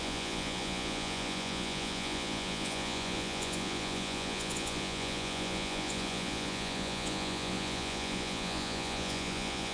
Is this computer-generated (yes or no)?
yes